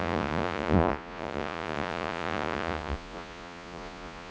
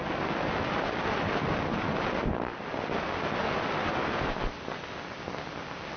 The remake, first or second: first